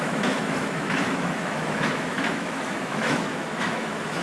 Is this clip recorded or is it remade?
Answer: remade